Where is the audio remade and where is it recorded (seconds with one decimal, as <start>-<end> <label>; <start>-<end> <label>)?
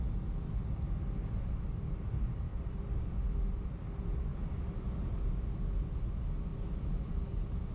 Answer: 0.0-2.5 recorded; 2.5-3.1 remade; 3.1-4.3 recorded; 4.3-5.1 remade; 5.1-7.7 recorded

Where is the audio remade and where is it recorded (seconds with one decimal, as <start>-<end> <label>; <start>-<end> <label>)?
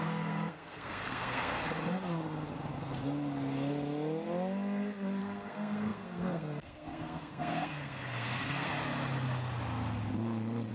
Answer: 0.0-1.6 remade; 1.6-5.2 recorded; 5.2-8.7 remade; 8.7-10.7 recorded